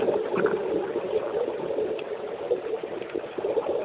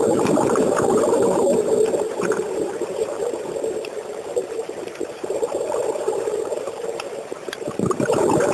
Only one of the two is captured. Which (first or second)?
first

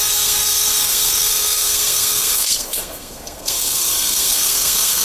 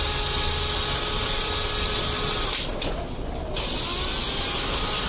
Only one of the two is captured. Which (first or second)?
second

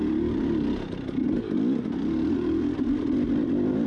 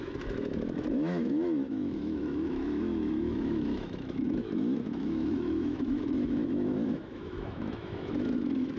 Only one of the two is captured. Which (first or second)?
first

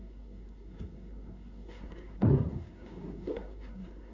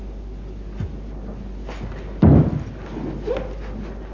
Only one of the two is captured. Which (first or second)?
second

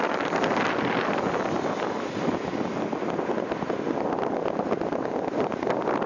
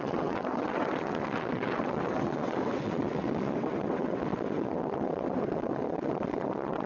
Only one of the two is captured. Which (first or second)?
first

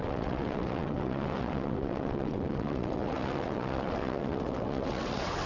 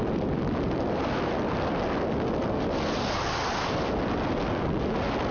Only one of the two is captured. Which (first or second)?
second